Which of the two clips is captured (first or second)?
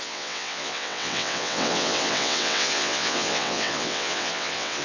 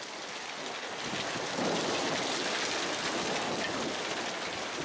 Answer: second